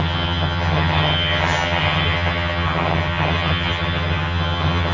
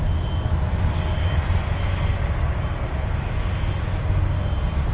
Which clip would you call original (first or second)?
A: second